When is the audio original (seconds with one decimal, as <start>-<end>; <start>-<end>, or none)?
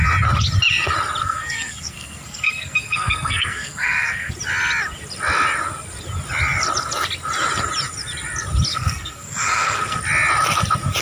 0.0-1.2; 4.3-8.7; 10.0-11.0